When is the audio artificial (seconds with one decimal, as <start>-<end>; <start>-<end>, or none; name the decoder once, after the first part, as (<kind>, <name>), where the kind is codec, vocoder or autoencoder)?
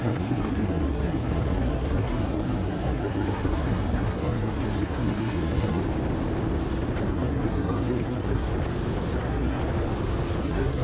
0.0-5.8 (codec, SNAC); 7.1-8.5; 9.2-9.6; 10.4-10.8